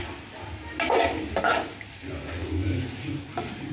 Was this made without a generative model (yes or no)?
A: yes